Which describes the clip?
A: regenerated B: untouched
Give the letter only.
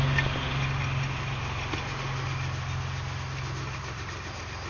B